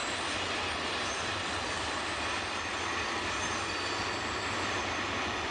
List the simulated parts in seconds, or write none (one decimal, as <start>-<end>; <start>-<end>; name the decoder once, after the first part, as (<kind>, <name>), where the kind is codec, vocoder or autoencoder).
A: none